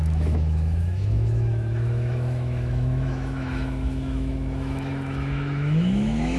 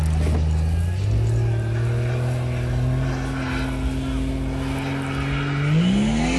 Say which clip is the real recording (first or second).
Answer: second